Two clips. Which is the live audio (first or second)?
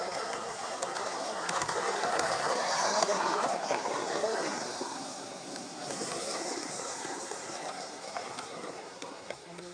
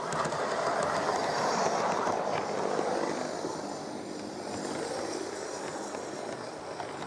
second